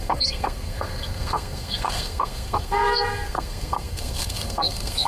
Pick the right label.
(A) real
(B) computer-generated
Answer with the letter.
B